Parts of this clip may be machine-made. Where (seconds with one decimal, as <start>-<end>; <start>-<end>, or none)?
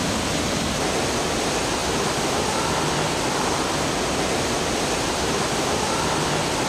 none